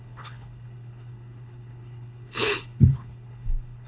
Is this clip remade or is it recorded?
remade